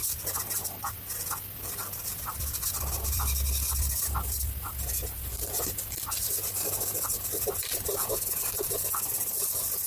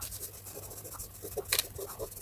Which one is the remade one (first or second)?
first